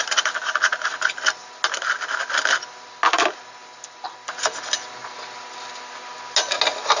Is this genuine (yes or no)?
yes